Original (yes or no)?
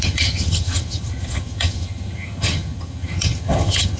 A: no